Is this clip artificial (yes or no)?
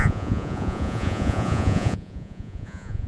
yes